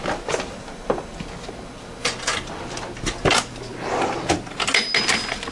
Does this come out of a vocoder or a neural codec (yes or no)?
no